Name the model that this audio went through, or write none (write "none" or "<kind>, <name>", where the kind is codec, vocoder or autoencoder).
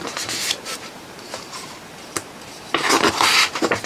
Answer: vocoder, BigVGAN v2